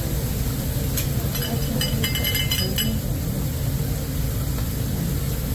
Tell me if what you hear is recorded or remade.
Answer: recorded